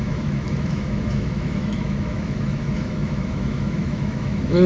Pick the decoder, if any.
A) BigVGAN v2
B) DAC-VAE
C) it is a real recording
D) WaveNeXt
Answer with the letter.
B